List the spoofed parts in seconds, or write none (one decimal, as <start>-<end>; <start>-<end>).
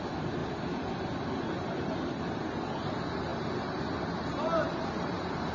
none